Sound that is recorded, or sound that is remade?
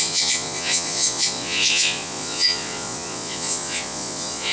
remade